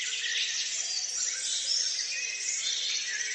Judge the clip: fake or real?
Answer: real